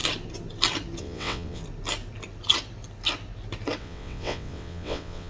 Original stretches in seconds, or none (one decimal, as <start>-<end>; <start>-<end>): 0.0-1.0; 1.6-3.8